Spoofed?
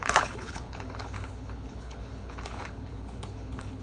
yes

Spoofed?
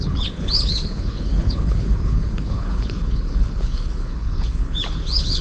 yes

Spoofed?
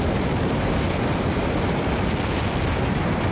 no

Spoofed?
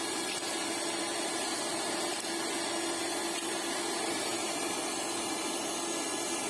no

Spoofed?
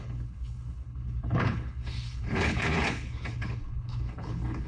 yes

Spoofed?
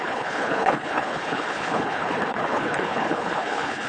yes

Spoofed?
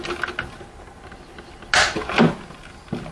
no